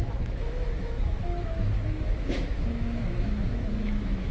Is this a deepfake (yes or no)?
yes